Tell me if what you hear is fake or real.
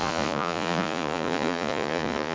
fake